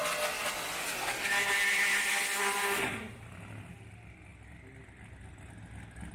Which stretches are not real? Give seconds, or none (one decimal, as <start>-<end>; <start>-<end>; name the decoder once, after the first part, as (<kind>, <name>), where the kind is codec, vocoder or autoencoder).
none